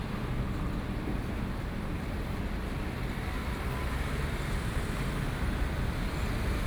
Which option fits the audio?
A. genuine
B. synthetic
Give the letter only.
B